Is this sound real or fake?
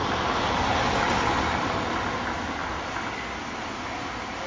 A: real